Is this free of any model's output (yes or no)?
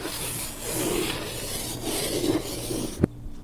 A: no